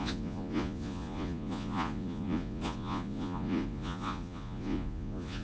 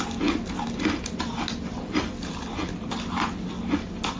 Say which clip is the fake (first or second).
first